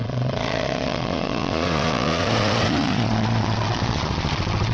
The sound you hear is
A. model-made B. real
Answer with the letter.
A